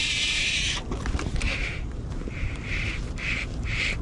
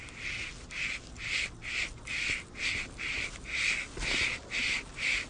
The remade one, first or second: first